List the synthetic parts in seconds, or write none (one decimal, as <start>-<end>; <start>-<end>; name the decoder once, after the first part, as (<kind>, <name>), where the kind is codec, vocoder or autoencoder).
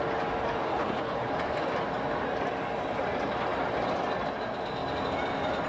0.7-1.3 (codec, HILCodec)